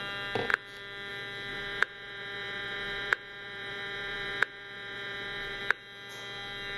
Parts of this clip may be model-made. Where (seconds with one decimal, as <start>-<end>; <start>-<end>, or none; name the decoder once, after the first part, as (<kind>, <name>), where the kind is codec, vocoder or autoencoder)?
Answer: 1.5-5.6 (vocoder, Vocos)